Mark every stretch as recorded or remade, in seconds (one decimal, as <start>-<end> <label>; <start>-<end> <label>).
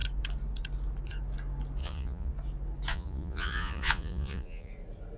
0.0-1.8 recorded; 1.8-2.3 remade; 2.3-2.9 recorded; 2.9-4.7 remade; 4.7-5.2 recorded